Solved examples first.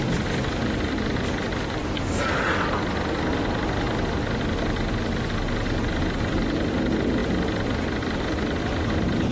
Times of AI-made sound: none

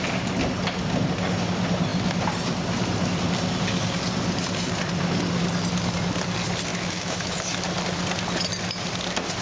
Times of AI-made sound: 6.7-7.4 (autoencoder, DAC-VAE)

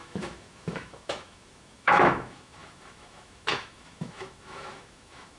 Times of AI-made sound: 0.0-5.4 (autoencoder, DAC-VAE)

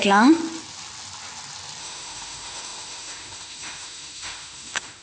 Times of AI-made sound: 0.0-0.4 (autoencoder, DAC-VAE); 1.8-5.0

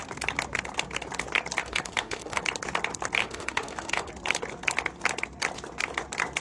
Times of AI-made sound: 1.6-2.4 (autoencoder, DAC-VAE); 3.2-4.1

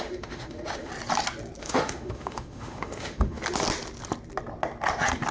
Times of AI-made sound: 0.0-0.9 (autoencoder, DAC-VAE); 1.6-3.4